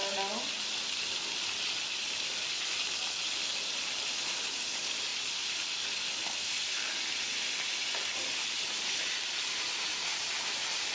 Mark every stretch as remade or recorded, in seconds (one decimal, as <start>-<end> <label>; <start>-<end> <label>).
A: 0.0-5.1 recorded; 5.1-9.8 remade; 9.8-10.9 recorded

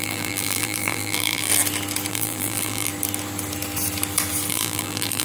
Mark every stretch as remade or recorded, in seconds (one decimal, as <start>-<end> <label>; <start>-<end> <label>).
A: 0.0-1.5 remade; 1.5-2.1 recorded; 2.1-2.9 remade; 2.9-4.5 recorded; 4.5-5.2 remade

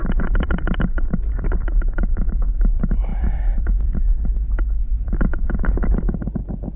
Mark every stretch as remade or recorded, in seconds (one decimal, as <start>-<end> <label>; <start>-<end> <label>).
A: 0.0-1.8 remade; 1.8-4.8 recorded; 4.8-6.2 remade; 6.2-6.8 recorded

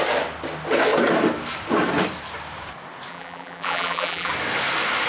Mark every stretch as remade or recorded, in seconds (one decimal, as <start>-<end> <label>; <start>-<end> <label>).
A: 0.0-3.1 recorded; 3.1-4.3 remade; 4.3-5.1 recorded

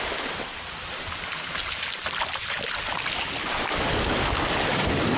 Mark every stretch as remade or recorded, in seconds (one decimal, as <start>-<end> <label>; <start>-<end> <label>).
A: 0.0-0.5 recorded; 0.5-1.1 remade; 1.1-5.2 recorded

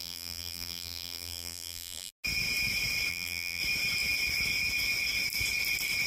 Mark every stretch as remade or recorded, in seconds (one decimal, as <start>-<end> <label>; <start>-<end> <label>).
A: 0.0-2.1 remade; 2.1-3.1 recorded; 3.1-3.6 remade; 3.6-6.1 recorded

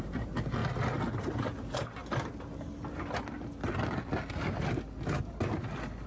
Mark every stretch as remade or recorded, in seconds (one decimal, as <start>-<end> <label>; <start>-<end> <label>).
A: 0.0-0.6 remade; 0.6-1.2 recorded; 1.2-2.0 remade; 2.0-6.1 recorded